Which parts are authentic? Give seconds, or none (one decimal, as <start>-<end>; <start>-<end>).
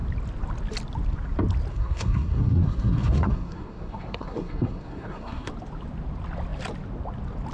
0.0-1.7; 5.5-7.5